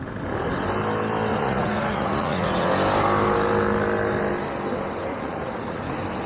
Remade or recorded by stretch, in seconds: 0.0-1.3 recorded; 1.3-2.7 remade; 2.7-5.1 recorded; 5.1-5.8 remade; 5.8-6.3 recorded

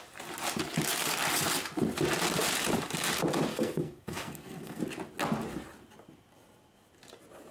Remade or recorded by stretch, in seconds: 0.0-3.5 recorded; 3.5-4.8 remade; 4.8-7.5 recorded

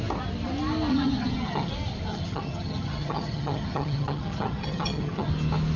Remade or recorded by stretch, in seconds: 0.0-0.9 recorded; 0.9-1.7 remade; 1.7-2.1 recorded; 2.1-5.3 remade; 5.3-5.8 recorded